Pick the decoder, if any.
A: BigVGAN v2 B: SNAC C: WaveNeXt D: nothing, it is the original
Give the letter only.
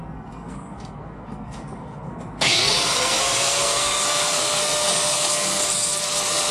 B